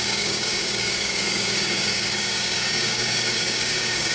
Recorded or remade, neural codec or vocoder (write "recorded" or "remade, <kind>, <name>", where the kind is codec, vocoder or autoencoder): remade, codec, DAC